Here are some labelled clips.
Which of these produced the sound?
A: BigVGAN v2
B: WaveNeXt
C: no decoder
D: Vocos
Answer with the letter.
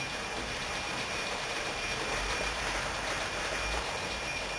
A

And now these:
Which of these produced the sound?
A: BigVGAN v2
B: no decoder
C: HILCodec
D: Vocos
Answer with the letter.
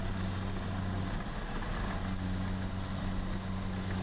B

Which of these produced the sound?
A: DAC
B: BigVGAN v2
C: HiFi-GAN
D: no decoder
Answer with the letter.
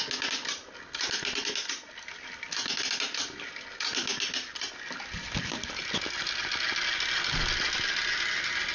D